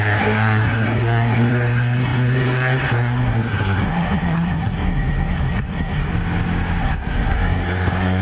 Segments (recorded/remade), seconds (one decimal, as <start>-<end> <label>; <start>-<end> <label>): 0.0-6.1 remade; 6.1-6.8 recorded; 6.8-8.2 remade